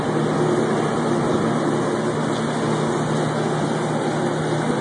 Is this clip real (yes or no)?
yes